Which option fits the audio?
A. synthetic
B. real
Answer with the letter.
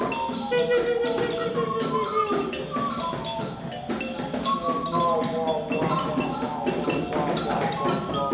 B